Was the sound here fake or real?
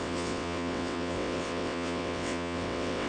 fake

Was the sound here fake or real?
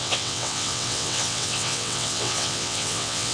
fake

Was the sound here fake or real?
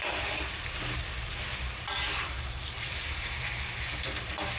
real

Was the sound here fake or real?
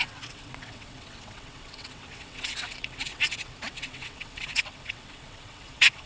fake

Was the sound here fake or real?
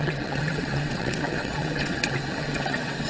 fake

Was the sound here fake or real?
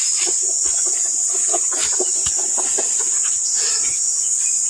real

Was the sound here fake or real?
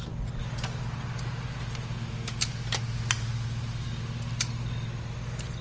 real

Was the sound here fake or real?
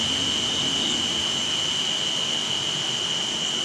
real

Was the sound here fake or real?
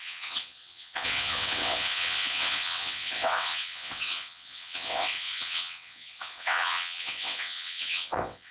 fake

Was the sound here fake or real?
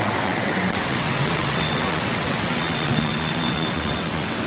fake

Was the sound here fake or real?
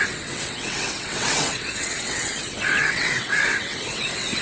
fake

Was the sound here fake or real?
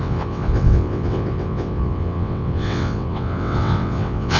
fake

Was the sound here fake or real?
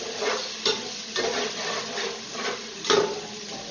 real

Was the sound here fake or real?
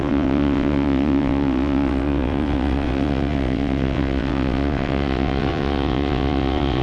fake